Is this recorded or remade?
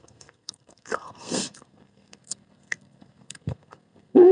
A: remade